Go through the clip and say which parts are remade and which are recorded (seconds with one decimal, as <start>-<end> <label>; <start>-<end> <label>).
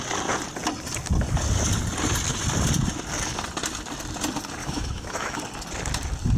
0.0-4.6 recorded; 4.6-5.4 remade; 5.4-6.4 recorded